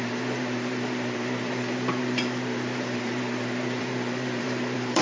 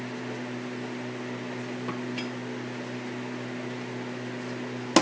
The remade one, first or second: first